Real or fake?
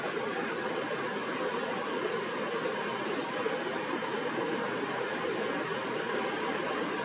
real